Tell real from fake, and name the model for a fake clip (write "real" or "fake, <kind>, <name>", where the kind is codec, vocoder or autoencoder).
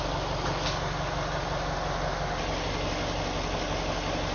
real